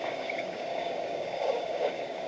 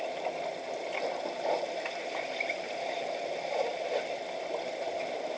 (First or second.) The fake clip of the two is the first